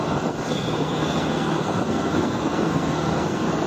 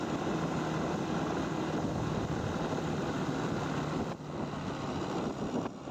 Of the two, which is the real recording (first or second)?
second